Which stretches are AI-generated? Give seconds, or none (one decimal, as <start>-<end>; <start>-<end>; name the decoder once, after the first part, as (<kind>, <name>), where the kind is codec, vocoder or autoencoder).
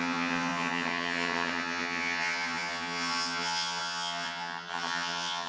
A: 0.0-5.5 (vocoder, HiFi-GAN)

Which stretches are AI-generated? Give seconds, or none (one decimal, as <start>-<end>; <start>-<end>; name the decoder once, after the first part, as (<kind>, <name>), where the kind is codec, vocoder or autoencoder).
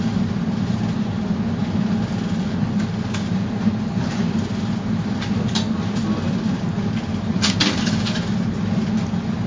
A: none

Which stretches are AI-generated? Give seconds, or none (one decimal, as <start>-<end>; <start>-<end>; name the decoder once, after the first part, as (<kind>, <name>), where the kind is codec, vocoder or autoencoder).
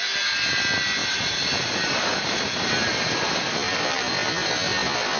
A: 1.0-4.1 (vocoder, BigVGAN v2)